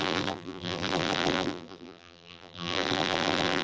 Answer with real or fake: fake